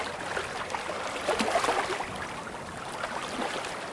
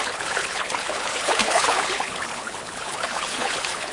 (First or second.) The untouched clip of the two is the first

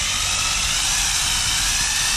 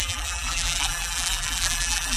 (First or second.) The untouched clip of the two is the first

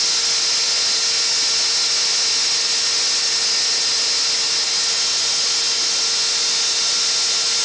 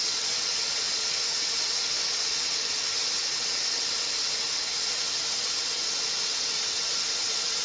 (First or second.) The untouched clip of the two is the first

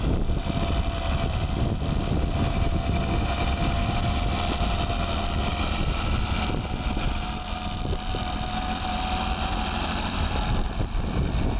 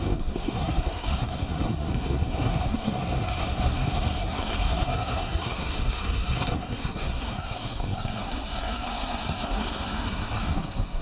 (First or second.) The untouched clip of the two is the first